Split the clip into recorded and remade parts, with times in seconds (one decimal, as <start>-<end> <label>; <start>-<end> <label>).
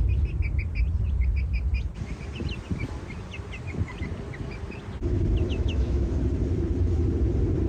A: 0.0-5.5 recorded; 5.5-6.2 remade; 6.2-7.7 recorded